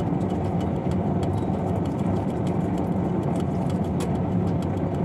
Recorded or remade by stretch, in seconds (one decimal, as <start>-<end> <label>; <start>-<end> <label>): 0.0-1.3 recorded; 1.3-2.7 remade; 2.7-5.0 recorded